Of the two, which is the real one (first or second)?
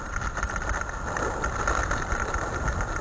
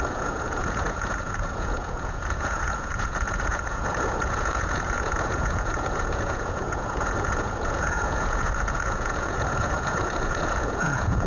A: first